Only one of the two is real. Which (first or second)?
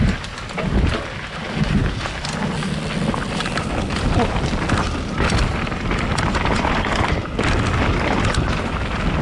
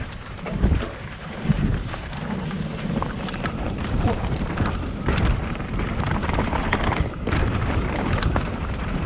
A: first